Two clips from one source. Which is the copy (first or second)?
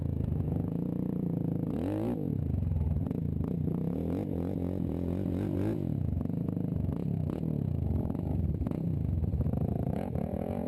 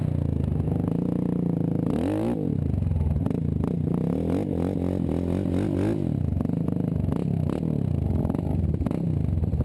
first